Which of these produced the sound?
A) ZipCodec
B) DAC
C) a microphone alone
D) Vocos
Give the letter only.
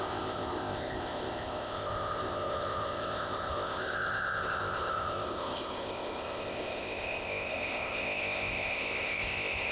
A